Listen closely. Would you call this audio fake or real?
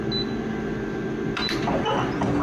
real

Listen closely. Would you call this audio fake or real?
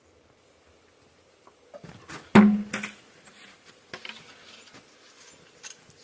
real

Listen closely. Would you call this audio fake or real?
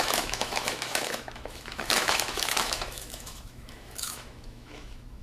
fake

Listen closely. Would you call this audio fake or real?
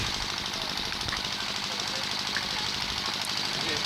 real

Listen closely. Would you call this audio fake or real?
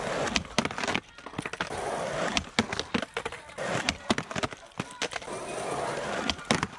real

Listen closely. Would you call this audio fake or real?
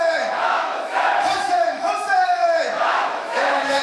fake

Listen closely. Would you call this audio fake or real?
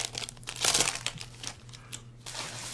real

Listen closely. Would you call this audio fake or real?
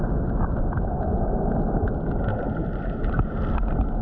real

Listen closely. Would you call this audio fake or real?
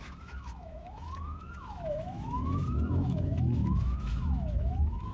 fake